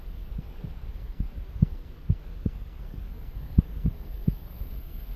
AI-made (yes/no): yes